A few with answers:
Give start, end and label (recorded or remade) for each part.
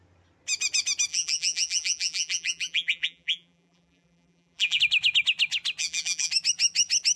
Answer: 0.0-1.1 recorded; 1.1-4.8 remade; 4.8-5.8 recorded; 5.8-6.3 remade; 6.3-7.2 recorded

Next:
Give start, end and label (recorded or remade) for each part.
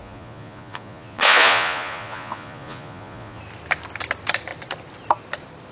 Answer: 0.0-3.4 remade; 3.4-5.7 recorded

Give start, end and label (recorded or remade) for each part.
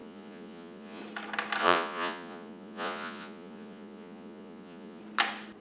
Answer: 0.0-1.0 remade; 1.0-1.6 recorded; 1.6-5.0 remade; 5.0-5.6 recorded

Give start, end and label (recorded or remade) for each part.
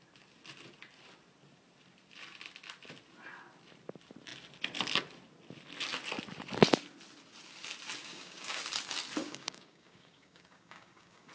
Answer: 0.0-8.0 recorded; 8.0-8.6 remade; 8.6-9.2 recorded; 9.2-11.3 remade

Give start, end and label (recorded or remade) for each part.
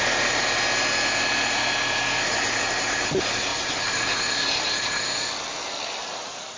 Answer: 0.0-3.5 recorded; 3.5-4.0 remade; 4.0-6.6 recorded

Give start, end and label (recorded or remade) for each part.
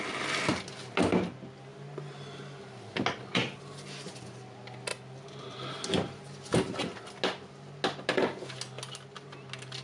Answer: 0.0-9.8 recorded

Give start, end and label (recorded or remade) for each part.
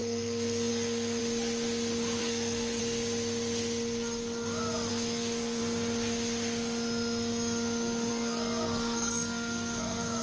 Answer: 0.0-1.2 remade; 1.2-2.2 recorded; 2.2-2.8 remade; 2.8-4.9 recorded; 4.9-5.6 remade; 5.6-8.1 recorded; 8.1-10.2 remade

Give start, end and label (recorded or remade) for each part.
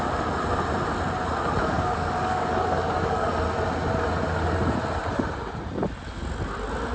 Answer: 0.0-1.6 recorded; 1.6-3.3 remade; 3.3-6.9 recorded